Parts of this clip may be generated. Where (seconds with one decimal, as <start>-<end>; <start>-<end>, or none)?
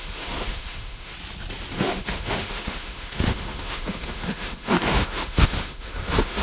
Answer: 0.0-1.1; 1.7-6.4